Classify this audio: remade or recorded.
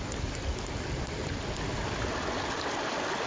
recorded